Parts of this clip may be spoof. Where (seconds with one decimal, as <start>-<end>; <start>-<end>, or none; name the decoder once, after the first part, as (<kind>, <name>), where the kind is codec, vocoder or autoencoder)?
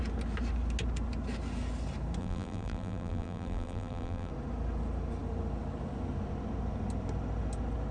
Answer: 2.2-4.3 (vocoder, BigVGAN v2)